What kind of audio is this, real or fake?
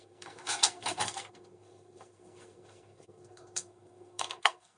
fake